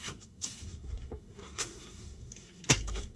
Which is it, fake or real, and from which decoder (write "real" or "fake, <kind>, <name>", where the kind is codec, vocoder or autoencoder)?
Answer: fake, codec, SNAC